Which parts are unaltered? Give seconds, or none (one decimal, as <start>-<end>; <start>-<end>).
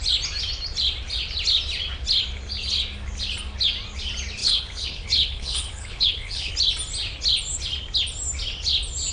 0.0-4.4; 6.5-9.1